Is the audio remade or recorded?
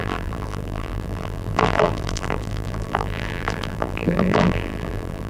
remade